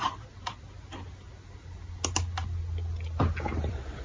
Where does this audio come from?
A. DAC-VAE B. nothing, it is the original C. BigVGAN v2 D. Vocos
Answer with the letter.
B